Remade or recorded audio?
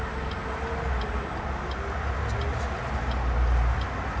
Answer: recorded